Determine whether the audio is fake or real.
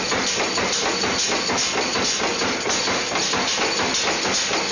real